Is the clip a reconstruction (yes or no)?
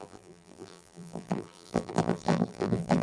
yes